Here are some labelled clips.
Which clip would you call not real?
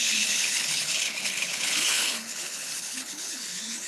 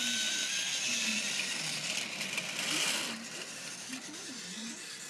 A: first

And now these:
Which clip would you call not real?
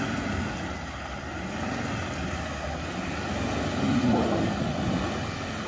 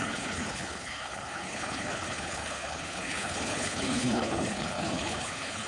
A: second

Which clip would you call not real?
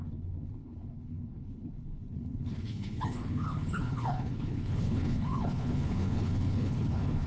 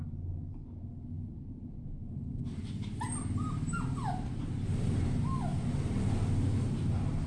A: first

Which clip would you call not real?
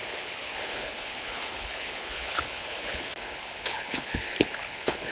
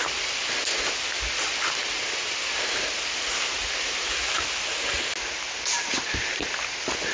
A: first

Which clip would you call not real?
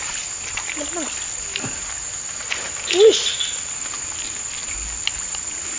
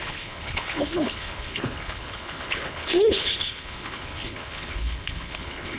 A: second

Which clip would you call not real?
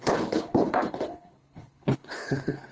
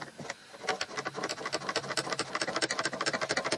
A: first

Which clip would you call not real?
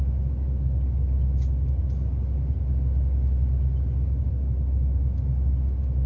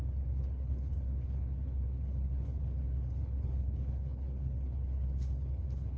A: second